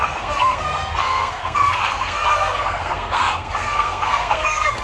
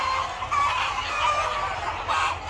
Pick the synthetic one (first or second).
first